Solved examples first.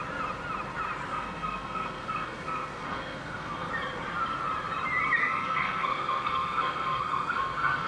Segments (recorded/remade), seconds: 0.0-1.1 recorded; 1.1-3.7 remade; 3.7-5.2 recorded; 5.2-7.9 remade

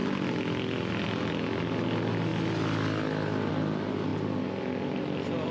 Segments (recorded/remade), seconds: 0.0-5.5 recorded

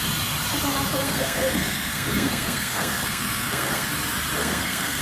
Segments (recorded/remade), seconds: 0.0-0.9 recorded; 0.9-3.9 remade; 3.9-4.4 recorded; 4.4-5.0 remade

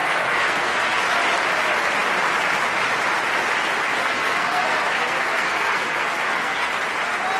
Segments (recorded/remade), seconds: 0.0-1.0 remade; 1.0-4.0 recorded; 4.0-6.7 remade; 6.7-7.4 recorded

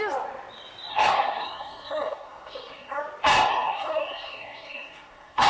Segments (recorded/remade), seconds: 0.0-0.9 recorded; 0.9-3.0 remade; 3.0-3.5 recorded; 3.5-5.5 remade

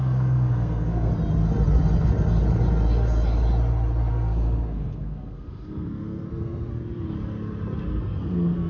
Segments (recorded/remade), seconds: 0.0-1.1 remade; 1.1-4.1 recorded; 4.1-6.7 remade; 6.7-8.0 recorded; 8.0-8.7 remade

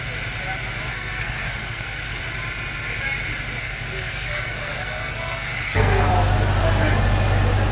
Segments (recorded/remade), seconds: 0.0-0.9 recorded; 0.9-2.2 remade; 2.2-3.6 recorded; 3.6-6.1 remade; 6.1-7.7 recorded